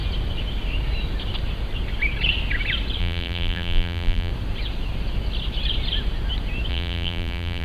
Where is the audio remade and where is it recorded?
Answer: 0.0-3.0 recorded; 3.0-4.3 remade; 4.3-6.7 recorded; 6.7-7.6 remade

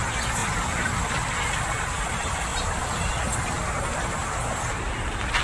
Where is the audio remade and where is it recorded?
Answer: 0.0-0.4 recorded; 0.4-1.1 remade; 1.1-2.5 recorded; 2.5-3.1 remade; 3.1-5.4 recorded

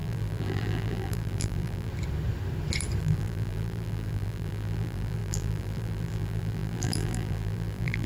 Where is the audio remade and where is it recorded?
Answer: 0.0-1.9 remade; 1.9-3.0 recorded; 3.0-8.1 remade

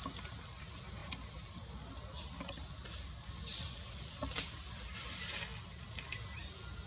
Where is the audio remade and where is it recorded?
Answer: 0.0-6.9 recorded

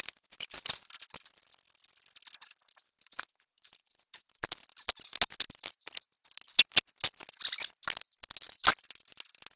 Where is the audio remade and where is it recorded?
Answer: 0.0-9.6 recorded

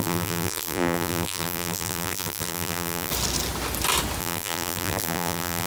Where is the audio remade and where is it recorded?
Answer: 0.0-3.1 remade; 3.1-4.2 recorded; 4.2-5.7 remade